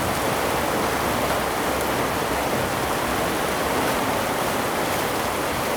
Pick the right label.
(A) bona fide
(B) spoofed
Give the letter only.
A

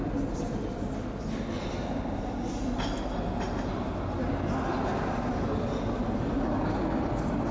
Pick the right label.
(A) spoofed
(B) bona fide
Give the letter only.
B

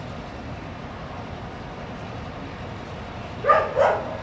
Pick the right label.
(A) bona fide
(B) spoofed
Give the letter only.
A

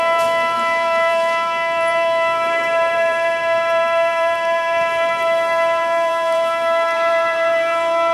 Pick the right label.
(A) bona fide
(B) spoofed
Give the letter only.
B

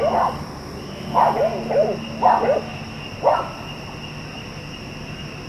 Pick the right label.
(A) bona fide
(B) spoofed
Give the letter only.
A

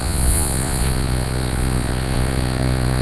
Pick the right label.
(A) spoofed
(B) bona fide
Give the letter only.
A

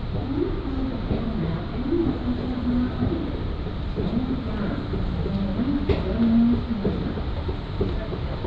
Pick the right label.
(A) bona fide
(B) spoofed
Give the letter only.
A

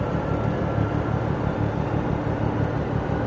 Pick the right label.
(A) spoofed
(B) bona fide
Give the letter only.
B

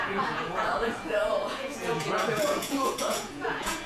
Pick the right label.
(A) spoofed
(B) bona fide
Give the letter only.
A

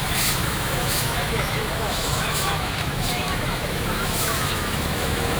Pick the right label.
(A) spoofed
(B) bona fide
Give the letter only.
A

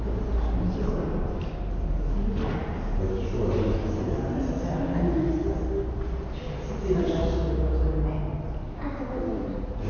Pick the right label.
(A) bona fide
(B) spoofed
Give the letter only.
A